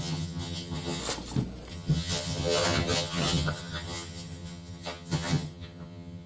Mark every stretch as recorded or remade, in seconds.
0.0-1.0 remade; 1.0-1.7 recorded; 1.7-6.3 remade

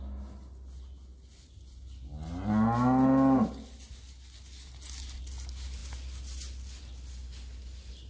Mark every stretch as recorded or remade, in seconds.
0.0-8.1 recorded

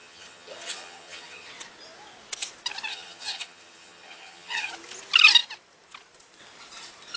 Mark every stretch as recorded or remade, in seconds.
0.0-1.5 remade; 1.5-2.9 recorded; 2.9-4.7 remade; 4.7-7.2 recorded

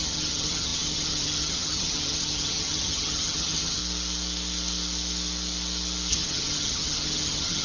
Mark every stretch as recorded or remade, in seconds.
0.0-3.8 remade; 3.8-6.1 recorded; 6.1-7.6 remade

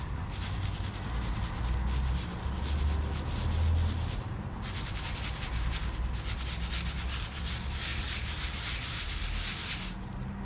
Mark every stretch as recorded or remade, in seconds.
0.0-10.4 recorded

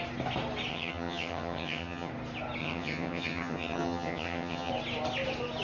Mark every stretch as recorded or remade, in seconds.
0.0-0.7 recorded; 0.7-2.1 remade; 2.1-2.6 recorded; 2.6-4.7 remade; 4.7-5.6 recorded